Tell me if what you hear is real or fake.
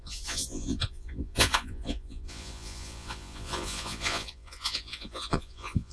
fake